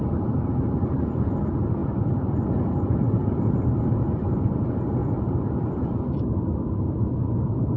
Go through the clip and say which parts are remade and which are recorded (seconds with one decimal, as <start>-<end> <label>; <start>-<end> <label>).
0.0-5.0 remade; 5.0-5.7 recorded; 5.7-7.8 remade